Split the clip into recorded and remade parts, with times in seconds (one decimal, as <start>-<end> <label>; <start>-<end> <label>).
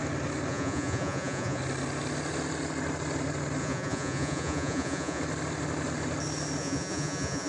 0.0-0.5 recorded; 0.5-1.6 remade; 1.6-3.6 recorded; 3.6-5.2 remade; 5.2-6.6 recorded; 6.6-7.5 remade